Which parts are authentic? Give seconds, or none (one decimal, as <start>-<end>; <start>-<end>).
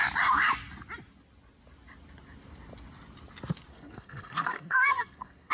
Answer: 0.0-3.7